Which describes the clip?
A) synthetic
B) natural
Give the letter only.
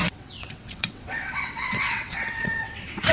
A